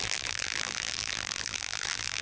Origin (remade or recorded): remade